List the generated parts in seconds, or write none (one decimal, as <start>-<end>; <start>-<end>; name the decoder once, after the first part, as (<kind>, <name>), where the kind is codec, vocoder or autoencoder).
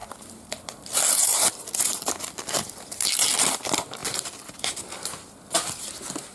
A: 0.0-4.0 (vocoder, BigVGAN v2)